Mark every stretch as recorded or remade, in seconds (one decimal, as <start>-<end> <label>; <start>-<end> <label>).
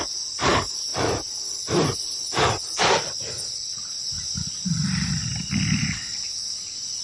0.0-0.9 recorded; 0.9-5.1 remade; 5.1-7.0 recorded